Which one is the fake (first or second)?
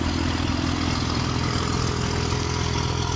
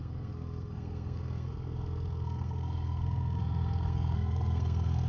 second